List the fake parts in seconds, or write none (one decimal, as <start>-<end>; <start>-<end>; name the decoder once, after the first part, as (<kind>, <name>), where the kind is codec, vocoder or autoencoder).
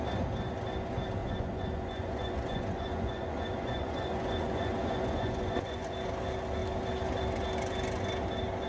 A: 1.2-5.9 (vocoder, Vocos)